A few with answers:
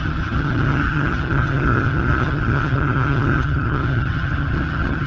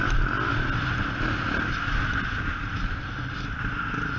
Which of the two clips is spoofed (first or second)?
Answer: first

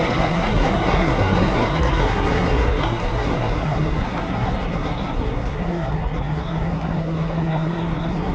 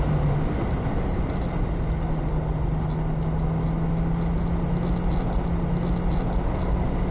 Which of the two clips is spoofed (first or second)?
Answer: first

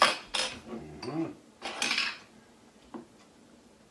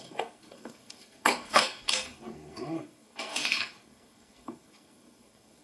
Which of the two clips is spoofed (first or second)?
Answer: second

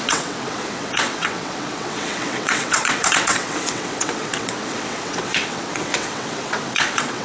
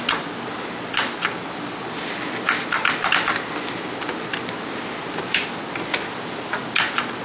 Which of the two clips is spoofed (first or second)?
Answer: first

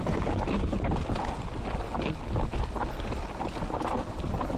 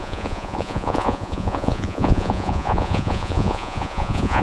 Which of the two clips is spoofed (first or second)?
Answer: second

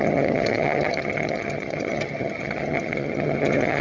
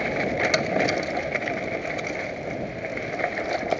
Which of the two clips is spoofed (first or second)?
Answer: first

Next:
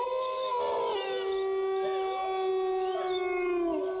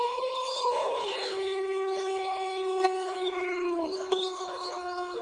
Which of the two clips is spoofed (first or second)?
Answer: second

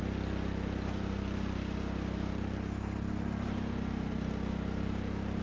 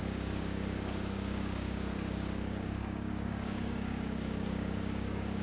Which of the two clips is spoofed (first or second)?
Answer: second